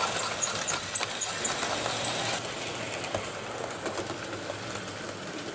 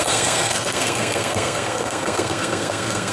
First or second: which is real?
first